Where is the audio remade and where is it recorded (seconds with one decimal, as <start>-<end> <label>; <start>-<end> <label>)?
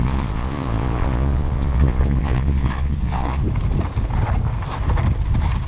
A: 0.0-3.4 remade; 3.4-5.7 recorded